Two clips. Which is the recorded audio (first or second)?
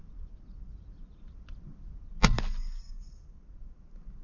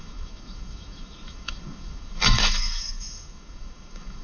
first